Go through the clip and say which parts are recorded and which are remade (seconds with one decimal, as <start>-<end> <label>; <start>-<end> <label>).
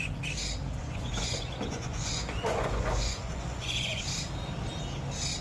0.0-0.8 recorded; 0.8-4.0 remade; 4.0-5.4 recorded